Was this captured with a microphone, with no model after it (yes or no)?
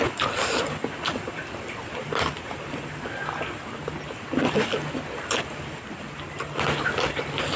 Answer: yes